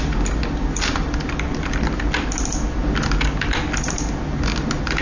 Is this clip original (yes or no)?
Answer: yes